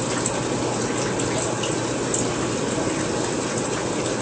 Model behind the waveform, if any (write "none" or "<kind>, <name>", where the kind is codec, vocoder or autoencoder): none